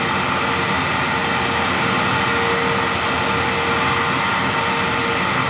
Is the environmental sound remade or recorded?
recorded